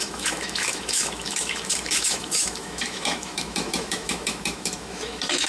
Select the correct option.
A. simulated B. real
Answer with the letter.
A